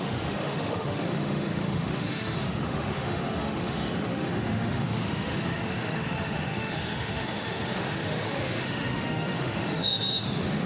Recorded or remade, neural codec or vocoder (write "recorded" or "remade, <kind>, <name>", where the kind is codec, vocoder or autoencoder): remade, autoencoder, DAC-VAE